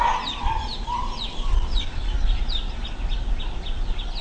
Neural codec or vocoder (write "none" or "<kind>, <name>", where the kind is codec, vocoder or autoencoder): none